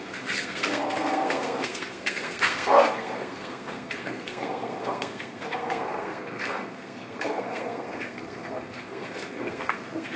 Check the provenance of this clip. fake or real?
fake